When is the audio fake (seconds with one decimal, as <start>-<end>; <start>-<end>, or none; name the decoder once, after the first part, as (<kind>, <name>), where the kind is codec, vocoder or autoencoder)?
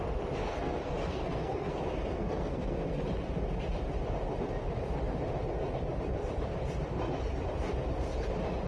0.4-3.0 (codec, SNAC)